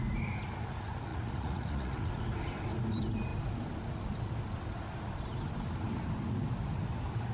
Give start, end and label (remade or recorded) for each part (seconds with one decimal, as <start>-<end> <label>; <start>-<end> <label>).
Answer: 0.0-1.1 recorded; 1.1-2.1 remade; 2.1-7.3 recorded